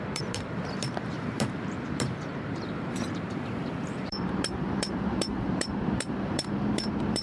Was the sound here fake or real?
fake